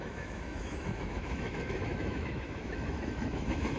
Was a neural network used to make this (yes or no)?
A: yes